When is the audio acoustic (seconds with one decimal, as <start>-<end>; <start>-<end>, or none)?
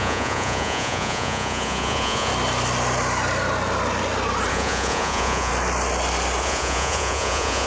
2.3-4.5; 5.5-6.4